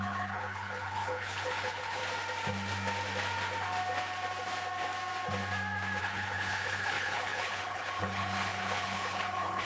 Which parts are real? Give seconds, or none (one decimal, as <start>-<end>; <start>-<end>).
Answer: 2.0-6.0